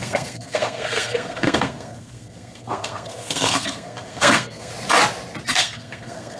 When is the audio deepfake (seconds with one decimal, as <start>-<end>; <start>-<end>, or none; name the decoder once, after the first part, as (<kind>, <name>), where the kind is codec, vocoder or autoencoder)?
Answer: 0.0-4.7 (codec, SNAC); 5.5-6.4